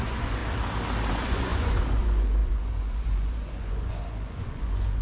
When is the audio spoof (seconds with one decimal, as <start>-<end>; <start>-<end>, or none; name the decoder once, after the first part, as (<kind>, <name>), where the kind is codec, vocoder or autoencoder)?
0.0-0.4 (vocoder, Vocos); 1.1-5.0